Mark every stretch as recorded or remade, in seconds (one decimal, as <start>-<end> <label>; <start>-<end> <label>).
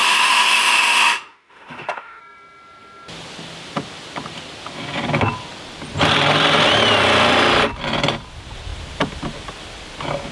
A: 0.0-2.2 remade; 2.2-10.3 recorded